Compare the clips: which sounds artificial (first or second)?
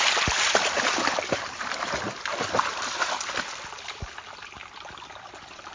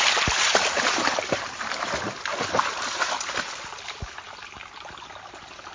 first